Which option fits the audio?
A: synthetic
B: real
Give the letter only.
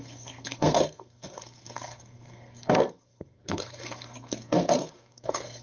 A